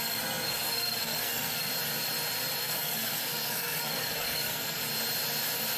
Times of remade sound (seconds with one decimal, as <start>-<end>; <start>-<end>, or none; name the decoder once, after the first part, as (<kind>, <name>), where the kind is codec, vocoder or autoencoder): 0.0-1.7 (codec, SNAC); 2.6-4.8